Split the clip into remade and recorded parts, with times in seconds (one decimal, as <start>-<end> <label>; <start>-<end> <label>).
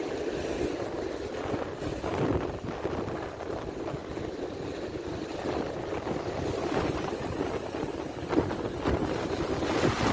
0.0-10.1 recorded